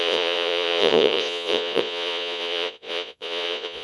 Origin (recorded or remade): remade